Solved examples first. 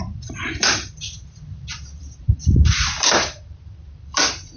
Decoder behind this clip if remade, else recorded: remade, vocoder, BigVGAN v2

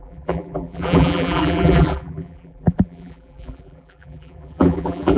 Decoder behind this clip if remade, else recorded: remade, vocoder, BigVGAN v2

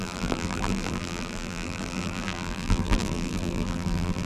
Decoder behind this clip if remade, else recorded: remade, vocoder, BigVGAN v2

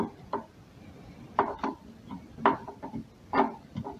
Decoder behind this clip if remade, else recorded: recorded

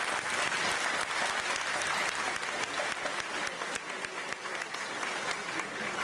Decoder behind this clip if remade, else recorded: recorded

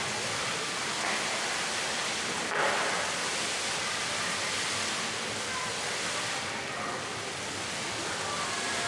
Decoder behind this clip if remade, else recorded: recorded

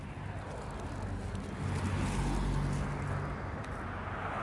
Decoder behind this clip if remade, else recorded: recorded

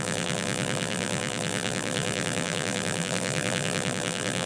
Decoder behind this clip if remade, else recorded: remade, vocoder, BigVGAN v2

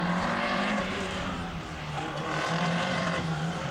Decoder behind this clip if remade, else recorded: remade, vocoder, BigVGAN v2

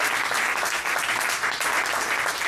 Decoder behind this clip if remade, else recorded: recorded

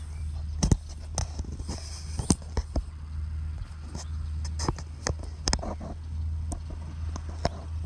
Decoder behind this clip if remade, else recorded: recorded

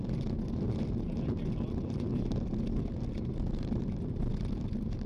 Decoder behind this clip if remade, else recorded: recorded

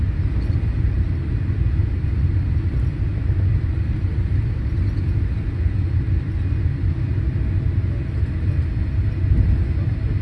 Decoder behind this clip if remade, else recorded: recorded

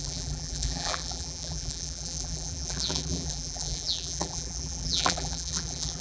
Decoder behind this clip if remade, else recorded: remade, vocoder, BigVGAN v2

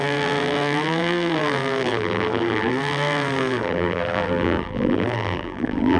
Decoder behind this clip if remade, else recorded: remade, vocoder, BigVGAN v2